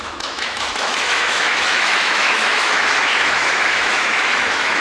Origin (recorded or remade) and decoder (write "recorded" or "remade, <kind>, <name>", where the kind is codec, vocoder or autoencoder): remade, autoencoder, DAC-VAE